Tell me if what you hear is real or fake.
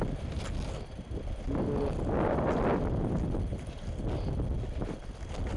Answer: real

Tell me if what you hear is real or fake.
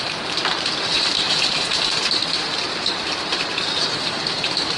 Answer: fake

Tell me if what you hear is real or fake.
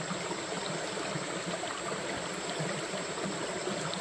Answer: real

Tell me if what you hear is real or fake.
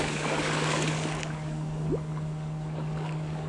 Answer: fake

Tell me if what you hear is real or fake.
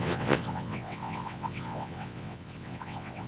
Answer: fake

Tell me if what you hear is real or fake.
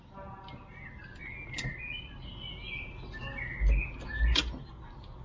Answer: real